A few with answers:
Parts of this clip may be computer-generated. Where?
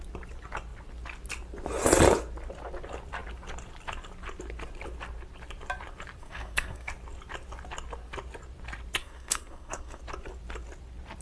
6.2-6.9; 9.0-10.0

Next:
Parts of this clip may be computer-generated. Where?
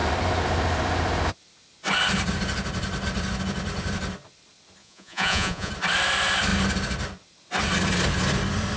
4.8-5.7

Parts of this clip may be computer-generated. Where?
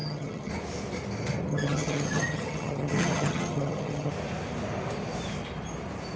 0.0-0.5; 1.5-4.1